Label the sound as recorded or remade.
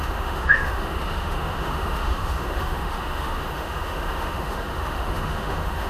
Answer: remade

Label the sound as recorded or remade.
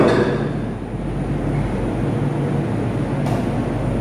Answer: recorded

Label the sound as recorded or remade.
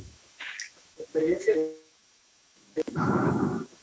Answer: remade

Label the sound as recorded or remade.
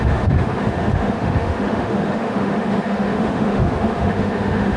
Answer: remade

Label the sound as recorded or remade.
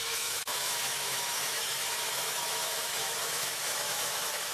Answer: remade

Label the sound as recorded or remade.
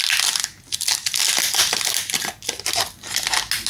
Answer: recorded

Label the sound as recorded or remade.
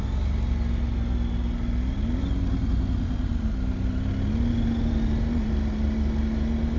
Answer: recorded